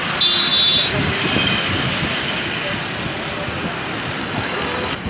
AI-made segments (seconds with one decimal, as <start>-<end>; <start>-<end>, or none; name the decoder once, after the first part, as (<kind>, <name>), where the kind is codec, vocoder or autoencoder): 4.2-5.1 (codec, DAC)